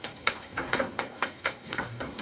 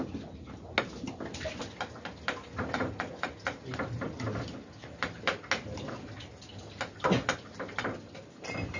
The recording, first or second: second